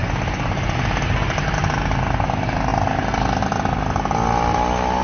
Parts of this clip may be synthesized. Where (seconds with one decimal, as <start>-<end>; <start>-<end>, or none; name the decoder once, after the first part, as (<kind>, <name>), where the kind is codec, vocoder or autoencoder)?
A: none